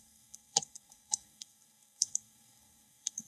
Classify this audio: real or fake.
fake